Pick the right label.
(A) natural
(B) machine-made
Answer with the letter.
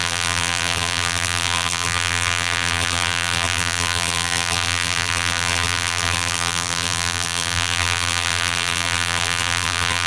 B